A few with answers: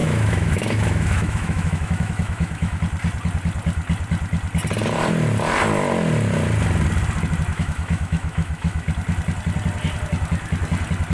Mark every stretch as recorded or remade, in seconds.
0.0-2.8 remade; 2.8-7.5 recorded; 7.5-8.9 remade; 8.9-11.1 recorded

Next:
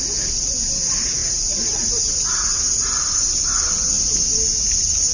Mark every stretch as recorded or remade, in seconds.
0.0-1.2 recorded; 1.2-2.1 remade; 2.1-5.1 recorded